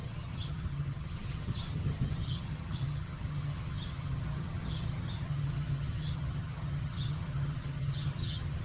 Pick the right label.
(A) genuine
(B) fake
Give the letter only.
B